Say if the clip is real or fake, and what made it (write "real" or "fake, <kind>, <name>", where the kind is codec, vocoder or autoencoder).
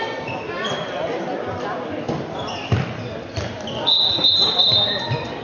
real